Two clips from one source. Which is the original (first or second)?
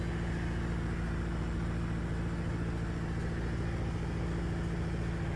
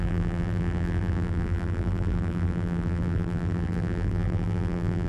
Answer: first